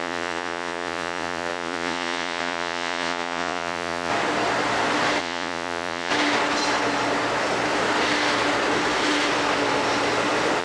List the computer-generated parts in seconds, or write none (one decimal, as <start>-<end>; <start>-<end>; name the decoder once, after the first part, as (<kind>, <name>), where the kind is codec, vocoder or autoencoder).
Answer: 0.0-4.1 (vocoder, Vocos); 5.2-6.1